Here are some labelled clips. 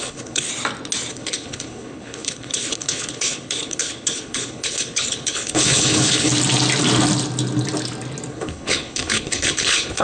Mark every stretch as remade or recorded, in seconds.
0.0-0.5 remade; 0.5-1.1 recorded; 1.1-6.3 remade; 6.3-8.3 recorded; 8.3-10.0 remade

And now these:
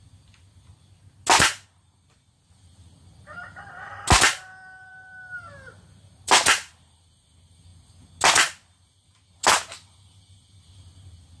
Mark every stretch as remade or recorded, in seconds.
0.0-11.4 recorded

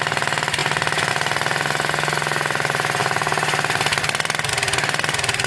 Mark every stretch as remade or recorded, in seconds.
0.0-5.5 recorded

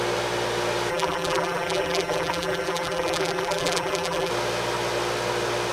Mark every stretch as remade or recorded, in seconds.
0.0-0.9 recorded; 0.9-4.3 remade; 4.3-5.7 recorded

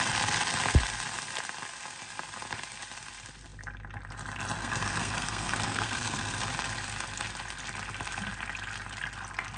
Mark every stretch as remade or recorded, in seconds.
0.0-4.6 recorded; 4.6-6.4 remade; 6.4-9.6 recorded

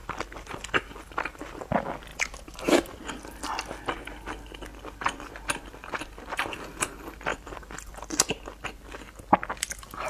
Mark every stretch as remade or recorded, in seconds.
0.0-1.7 remade; 1.7-7.3 recorded; 7.3-8.6 remade; 8.6-10.1 recorded

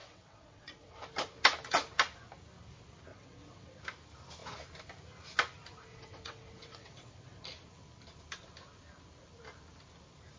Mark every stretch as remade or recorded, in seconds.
0.0-1.0 remade; 1.0-3.1 recorded; 3.1-3.8 remade; 3.8-5.9 recorded; 5.9-7.4 remade; 7.4-10.4 recorded

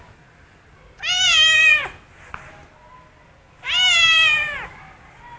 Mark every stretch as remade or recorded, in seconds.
0.0-5.4 recorded